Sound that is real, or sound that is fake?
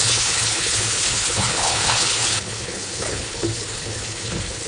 fake